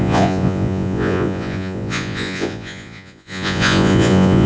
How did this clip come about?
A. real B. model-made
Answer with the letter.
B